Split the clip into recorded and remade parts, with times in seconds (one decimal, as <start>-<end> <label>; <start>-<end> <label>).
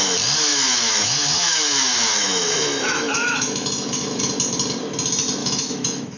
0.0-0.5 recorded; 0.5-4.2 remade; 4.2-5.4 recorded; 5.4-6.2 remade